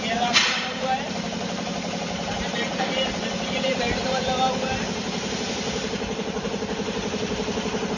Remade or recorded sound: remade